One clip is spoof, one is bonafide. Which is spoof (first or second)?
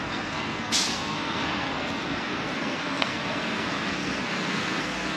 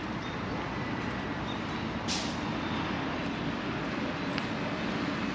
first